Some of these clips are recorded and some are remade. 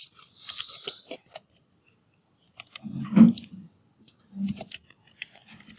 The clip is recorded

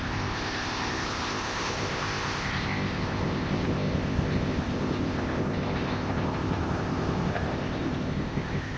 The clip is remade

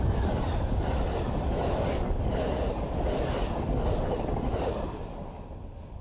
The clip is recorded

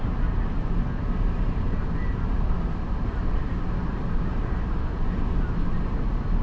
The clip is recorded